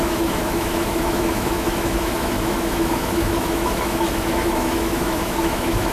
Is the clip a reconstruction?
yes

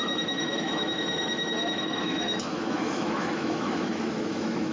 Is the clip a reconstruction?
yes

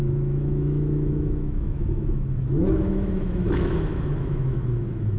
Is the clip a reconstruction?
yes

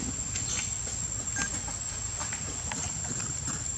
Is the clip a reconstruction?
no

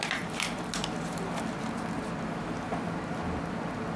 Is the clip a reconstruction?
no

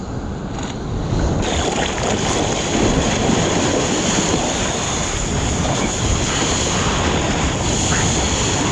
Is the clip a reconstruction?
no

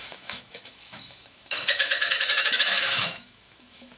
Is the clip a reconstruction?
yes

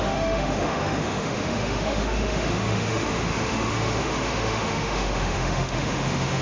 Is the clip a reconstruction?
yes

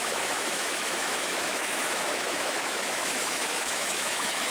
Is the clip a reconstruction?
yes